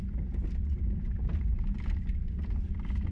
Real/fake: real